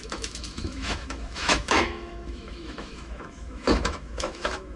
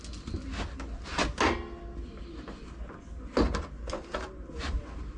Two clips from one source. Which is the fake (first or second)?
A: first